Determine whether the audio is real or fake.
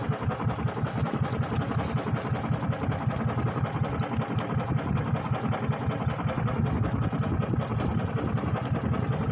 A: real